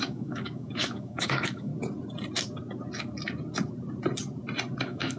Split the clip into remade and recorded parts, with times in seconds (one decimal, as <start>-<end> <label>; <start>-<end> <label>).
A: 0.0-1.7 remade; 1.7-4.8 recorded; 4.8-5.2 remade